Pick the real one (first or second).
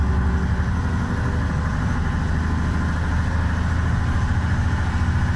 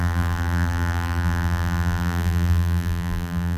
first